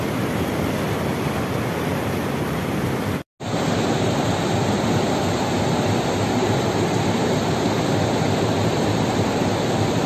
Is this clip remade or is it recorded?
recorded